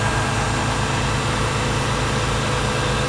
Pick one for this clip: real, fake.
real